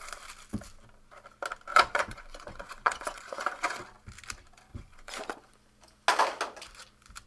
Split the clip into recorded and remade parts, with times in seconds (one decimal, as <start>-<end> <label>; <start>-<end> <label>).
0.0-1.7 recorded; 1.7-3.8 remade; 3.8-4.7 recorded; 4.7-5.5 remade; 5.5-7.3 recorded